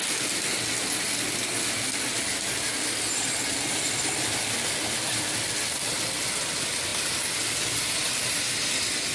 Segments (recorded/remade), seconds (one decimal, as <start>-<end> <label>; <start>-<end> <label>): 0.0-9.1 recorded